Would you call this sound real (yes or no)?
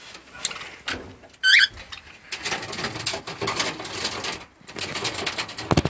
yes